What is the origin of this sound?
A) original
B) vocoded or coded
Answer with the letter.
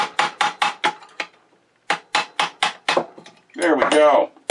A